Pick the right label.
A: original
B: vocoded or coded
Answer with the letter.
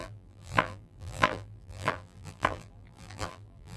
B